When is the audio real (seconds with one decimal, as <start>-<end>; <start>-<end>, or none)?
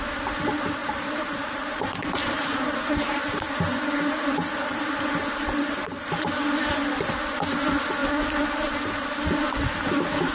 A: 0.0-0.8; 5.0-5.6; 6.6-10.3